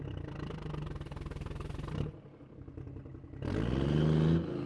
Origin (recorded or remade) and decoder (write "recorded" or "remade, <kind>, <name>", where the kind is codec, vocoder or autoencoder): recorded